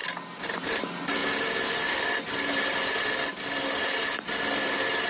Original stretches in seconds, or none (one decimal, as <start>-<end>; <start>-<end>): 0.0-5.1